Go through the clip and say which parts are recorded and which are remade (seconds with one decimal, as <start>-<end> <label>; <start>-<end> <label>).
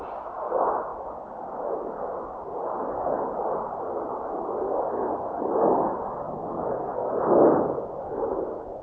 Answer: 0.0-6.5 recorded; 6.5-7.1 remade; 7.1-8.8 recorded